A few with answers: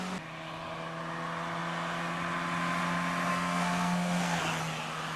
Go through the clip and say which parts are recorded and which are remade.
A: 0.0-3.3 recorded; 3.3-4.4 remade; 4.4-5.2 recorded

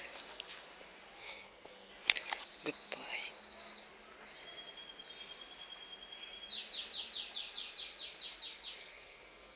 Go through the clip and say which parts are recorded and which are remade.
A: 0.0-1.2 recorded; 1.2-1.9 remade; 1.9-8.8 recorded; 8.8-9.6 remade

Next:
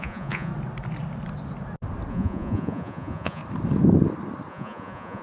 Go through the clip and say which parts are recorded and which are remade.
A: 0.0-0.5 remade; 0.5-2.1 recorded; 2.1-3.4 remade; 3.4-4.5 recorded; 4.5-5.2 remade

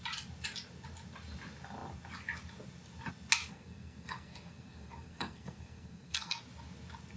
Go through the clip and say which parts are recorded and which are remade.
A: 0.0-3.5 recorded; 3.5-6.4 remade; 6.4-7.2 recorded

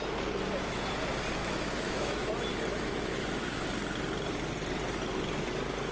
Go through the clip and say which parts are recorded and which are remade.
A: 0.0-1.4 recorded; 1.4-2.3 remade; 2.3-2.7 recorded; 2.7-3.7 remade; 3.7-5.9 recorded

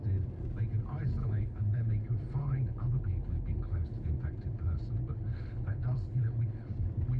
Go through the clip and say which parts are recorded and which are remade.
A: 0.0-1.2 recorded; 1.2-1.9 remade; 1.9-2.4 recorded; 2.4-4.1 remade; 4.1-5.3 recorded; 5.3-6.7 remade; 6.7-7.2 recorded

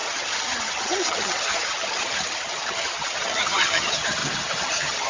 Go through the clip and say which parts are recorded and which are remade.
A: 0.0-5.1 remade

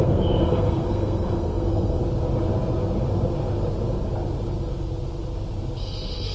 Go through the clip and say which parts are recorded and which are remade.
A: 0.0-2.0 remade; 2.0-5.8 recorded; 5.8-6.3 remade